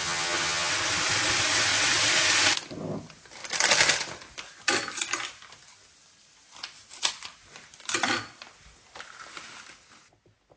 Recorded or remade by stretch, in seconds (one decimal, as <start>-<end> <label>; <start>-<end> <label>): 0.0-0.7 remade; 0.7-10.6 recorded